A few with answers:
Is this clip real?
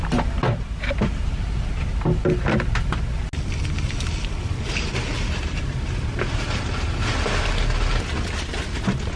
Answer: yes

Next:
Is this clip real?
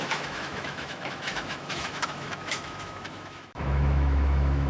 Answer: no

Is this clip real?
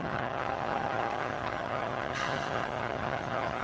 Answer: no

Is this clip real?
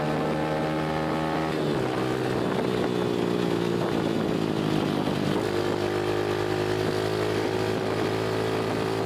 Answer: yes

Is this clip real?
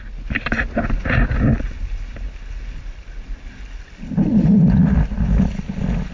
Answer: yes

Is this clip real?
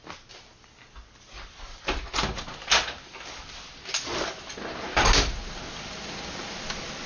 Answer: yes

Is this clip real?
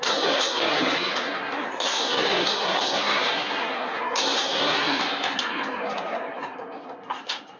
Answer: no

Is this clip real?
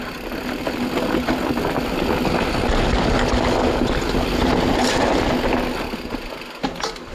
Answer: yes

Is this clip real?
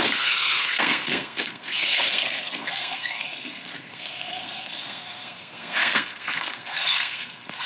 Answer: no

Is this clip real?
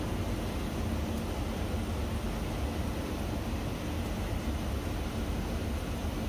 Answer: yes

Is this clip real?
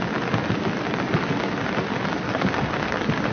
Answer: yes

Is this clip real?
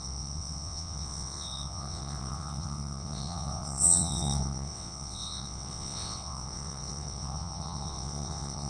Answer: no